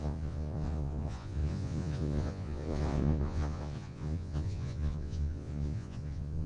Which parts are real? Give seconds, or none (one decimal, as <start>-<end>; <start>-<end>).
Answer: none